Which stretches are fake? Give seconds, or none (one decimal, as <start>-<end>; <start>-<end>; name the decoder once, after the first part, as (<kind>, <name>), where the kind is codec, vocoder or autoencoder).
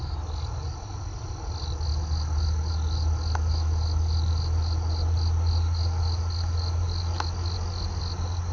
none